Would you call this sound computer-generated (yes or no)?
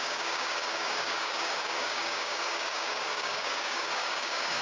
yes